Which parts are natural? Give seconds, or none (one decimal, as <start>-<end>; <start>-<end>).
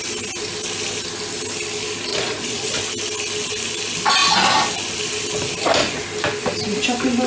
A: 0.0-2.1; 2.8-7.3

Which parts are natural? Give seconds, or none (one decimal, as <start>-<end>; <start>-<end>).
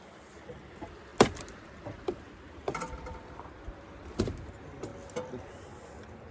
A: 0.0-6.3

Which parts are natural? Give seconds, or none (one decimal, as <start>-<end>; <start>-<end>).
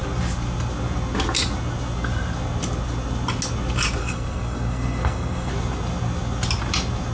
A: 0.0-4.0; 5.5-7.1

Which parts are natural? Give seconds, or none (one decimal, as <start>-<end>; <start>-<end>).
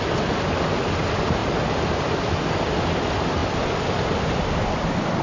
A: 0.0-5.2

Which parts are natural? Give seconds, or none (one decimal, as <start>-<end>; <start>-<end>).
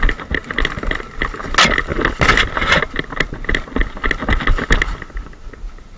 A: 0.0-6.0